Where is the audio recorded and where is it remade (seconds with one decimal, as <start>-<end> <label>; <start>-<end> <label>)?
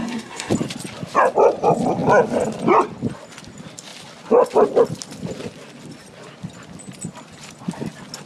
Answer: 0.0-0.5 remade; 0.5-8.3 recorded